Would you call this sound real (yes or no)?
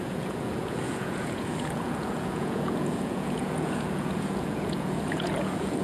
no